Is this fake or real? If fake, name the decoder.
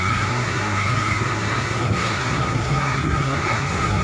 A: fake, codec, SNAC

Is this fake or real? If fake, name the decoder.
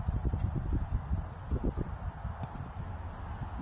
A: real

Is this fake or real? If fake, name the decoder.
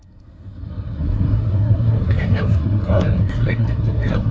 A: fake, codec, SNAC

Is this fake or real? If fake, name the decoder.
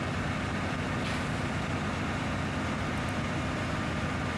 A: real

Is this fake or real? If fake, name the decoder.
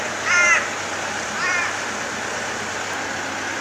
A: real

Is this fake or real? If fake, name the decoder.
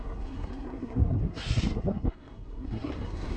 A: fake, codec, SNAC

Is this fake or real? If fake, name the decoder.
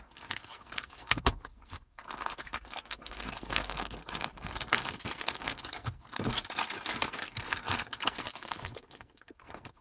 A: fake, codec, SNAC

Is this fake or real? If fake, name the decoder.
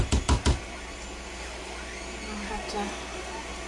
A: real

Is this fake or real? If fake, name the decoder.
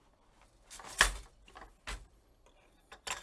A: real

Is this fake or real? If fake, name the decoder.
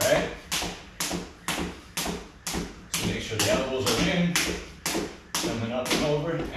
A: real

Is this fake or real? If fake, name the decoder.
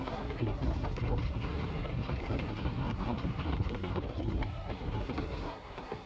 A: fake, codec, SNAC